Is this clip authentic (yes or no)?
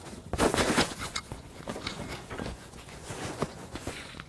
no